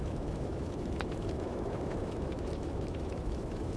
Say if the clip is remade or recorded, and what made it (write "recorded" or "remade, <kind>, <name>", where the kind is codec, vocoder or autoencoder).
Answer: remade, autoencoder, DAC-VAE